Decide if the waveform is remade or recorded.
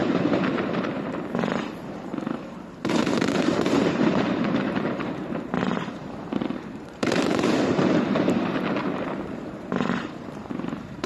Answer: remade